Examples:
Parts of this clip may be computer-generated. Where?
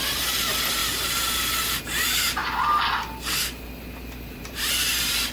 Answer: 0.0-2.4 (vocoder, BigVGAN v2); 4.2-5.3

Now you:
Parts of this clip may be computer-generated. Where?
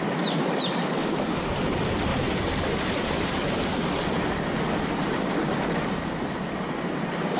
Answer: 1.0-1.5 (vocoder, BigVGAN v2); 2.1-2.6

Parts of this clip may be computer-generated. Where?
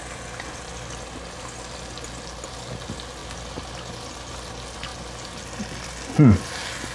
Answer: none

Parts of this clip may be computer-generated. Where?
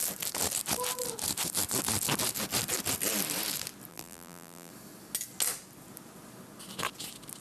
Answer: 3.9-4.7 (vocoder, BigVGAN v2)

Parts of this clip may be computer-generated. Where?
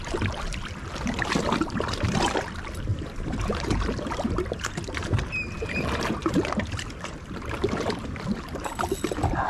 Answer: 2.9-5.2 (vocoder, BigVGAN v2)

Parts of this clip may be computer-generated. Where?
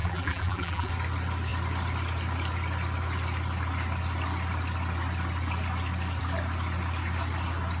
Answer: 0.0-0.9 (vocoder, BigVGAN v2)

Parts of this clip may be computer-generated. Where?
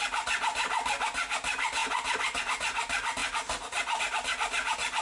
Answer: none